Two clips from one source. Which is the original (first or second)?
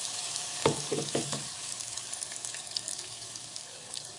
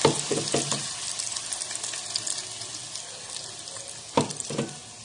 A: second